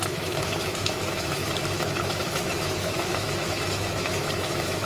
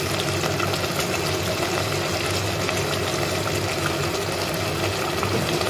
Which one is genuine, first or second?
second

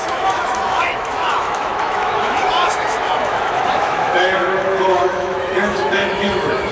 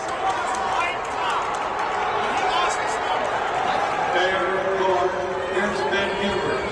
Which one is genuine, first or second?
second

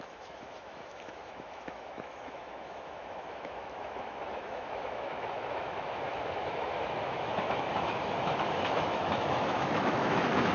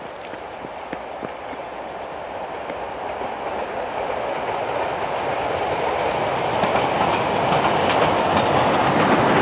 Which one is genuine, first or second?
second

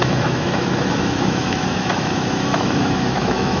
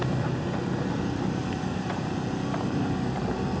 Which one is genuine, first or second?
second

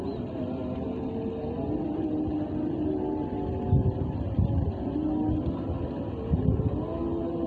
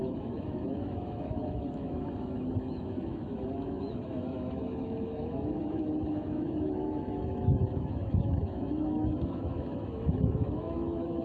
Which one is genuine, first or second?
first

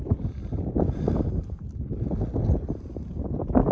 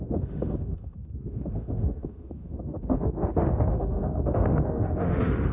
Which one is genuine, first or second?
first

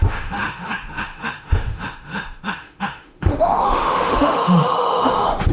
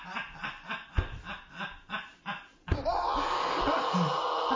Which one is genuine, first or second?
second